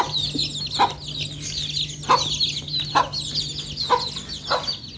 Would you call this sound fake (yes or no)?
no